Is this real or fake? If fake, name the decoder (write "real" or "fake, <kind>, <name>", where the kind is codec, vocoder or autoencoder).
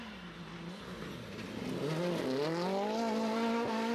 real